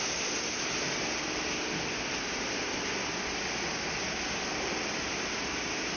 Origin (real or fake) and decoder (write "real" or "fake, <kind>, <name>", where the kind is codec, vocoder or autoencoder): real